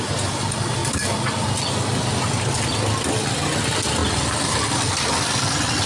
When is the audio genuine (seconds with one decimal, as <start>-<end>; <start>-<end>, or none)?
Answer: 0.0-5.9